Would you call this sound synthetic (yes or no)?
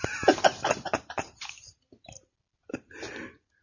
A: no